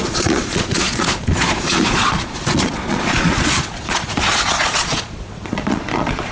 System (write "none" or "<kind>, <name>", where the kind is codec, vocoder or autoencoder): vocoder, Vocos